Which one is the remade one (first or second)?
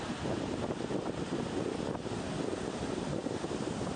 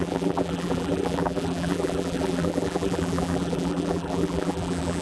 second